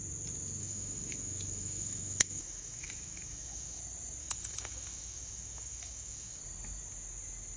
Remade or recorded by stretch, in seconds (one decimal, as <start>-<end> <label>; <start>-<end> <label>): 0.0-0.6 recorded; 0.6-3.8 remade; 3.8-4.2 recorded; 4.2-6.4 remade; 6.4-7.6 recorded